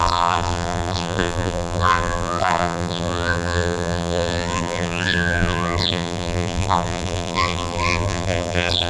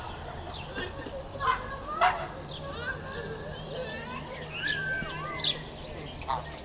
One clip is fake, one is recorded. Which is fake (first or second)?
first